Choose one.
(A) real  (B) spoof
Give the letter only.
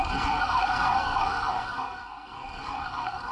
B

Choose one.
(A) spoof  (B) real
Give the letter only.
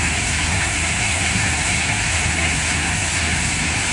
A